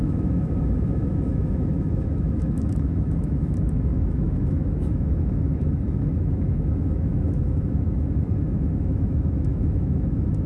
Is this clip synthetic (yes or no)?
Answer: yes